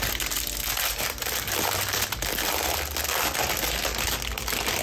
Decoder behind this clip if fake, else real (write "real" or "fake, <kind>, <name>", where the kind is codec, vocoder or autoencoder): real